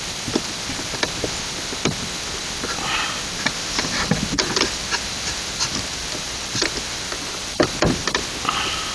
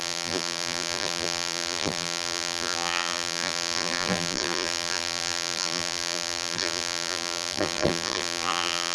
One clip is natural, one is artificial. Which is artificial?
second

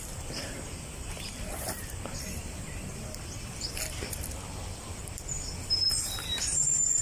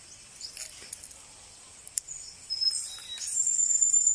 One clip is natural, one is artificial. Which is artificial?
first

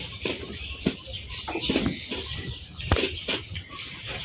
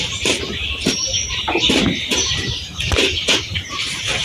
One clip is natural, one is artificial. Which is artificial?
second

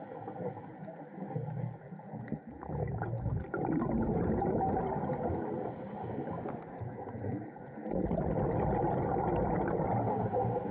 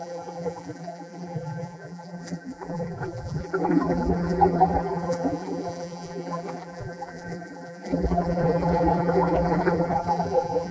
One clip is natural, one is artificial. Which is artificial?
second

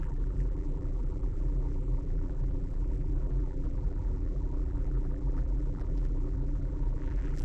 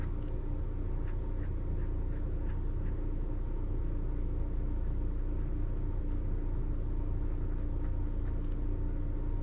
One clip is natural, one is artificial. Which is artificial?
first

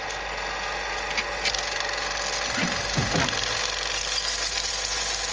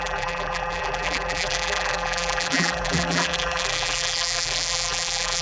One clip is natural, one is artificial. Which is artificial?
second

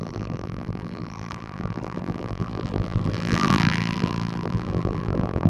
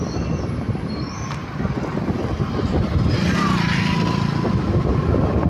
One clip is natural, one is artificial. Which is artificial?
first